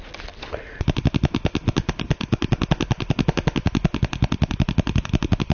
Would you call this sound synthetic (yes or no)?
no